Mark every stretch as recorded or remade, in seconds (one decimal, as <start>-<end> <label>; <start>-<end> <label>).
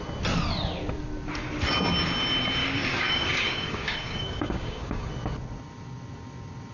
0.0-2.6 recorded; 2.6-5.1 remade; 5.1-6.7 recorded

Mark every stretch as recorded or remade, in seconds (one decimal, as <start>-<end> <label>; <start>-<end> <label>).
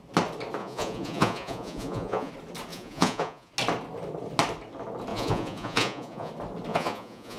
0.0-0.6 recorded; 0.6-2.3 remade; 2.3-2.7 recorded; 2.7-3.5 remade; 3.5-5.1 recorded; 5.1-6.3 remade; 6.3-6.7 recorded; 6.7-7.4 remade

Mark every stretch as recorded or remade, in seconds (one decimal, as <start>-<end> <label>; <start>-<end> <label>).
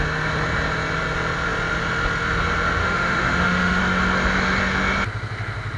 0.0-2.8 recorded; 2.8-3.8 remade; 3.8-5.8 recorded